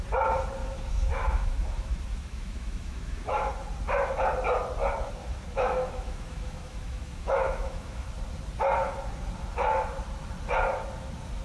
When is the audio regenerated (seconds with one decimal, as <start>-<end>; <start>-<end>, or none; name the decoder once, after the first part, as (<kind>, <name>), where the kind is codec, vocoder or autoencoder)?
0.6-3.5 (autoencoder, DAC-VAE); 5.2-8.1